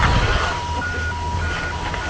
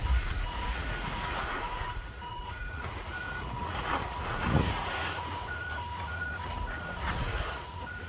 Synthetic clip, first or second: second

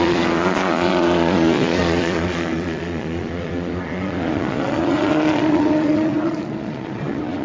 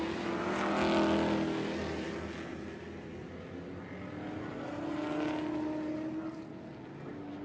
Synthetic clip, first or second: first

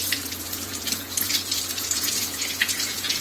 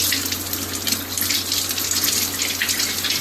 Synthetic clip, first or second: first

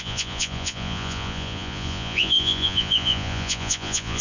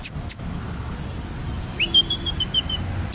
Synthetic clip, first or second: first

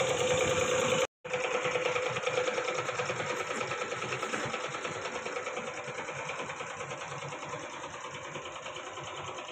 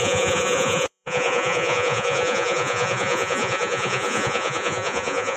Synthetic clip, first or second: second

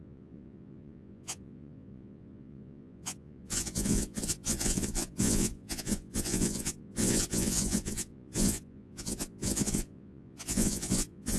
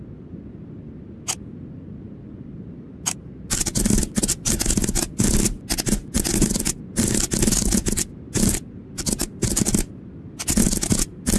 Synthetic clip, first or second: first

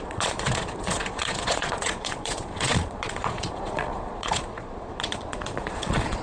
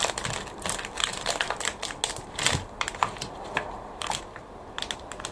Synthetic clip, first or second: first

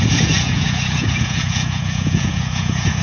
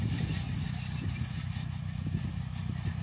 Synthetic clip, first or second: first